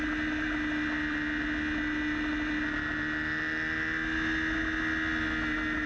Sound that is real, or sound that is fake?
real